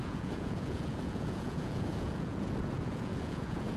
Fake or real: fake